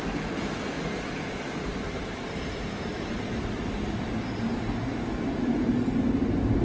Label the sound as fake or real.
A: real